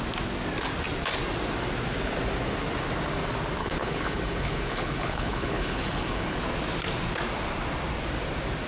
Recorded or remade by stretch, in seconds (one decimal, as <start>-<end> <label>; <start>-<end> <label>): 0.0-3.6 recorded; 3.6-6.4 remade; 6.4-8.7 recorded